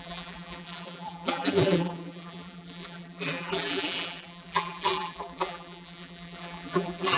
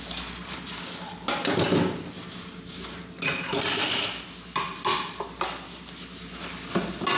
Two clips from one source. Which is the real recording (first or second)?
second